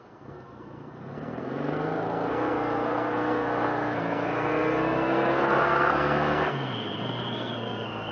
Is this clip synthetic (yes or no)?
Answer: yes